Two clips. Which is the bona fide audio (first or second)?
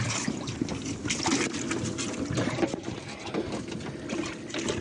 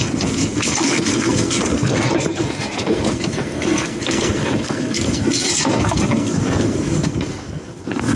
first